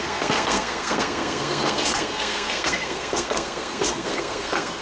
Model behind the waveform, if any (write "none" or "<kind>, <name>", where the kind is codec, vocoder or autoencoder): codec, SNAC